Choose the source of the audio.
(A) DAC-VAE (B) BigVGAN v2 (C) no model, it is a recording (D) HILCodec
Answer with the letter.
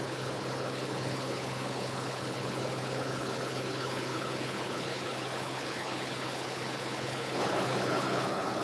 D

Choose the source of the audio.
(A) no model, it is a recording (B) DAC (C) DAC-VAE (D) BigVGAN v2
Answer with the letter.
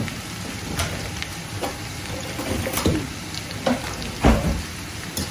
A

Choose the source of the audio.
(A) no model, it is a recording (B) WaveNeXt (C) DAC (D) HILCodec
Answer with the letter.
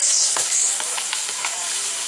C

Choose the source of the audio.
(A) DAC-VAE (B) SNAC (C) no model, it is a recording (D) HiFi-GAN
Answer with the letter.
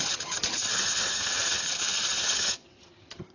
D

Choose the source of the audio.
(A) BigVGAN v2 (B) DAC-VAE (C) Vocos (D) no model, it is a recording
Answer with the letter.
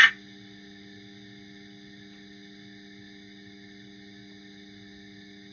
D